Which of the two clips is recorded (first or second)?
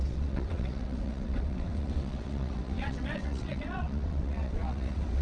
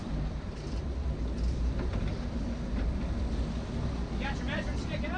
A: second